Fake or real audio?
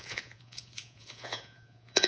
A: fake